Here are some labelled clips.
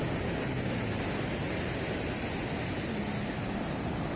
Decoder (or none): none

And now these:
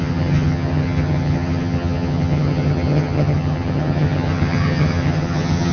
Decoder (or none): vocoder, HiFi-GAN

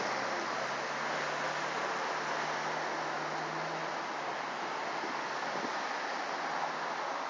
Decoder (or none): none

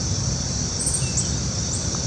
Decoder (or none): none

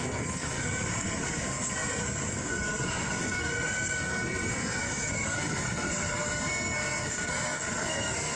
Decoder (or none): codec, SNAC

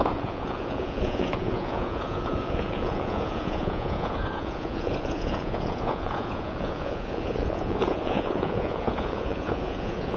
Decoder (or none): vocoder, Vocos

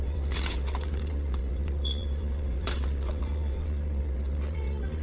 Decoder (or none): vocoder, WaveNeXt